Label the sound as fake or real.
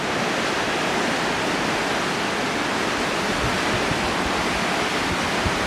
real